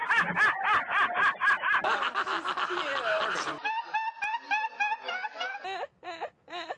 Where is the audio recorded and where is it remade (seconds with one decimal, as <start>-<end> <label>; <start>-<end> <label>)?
0.0-6.8 recorded